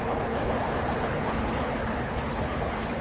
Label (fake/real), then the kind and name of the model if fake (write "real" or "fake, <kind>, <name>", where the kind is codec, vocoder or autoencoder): fake, codec, HILCodec